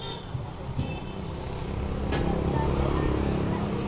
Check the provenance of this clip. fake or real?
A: real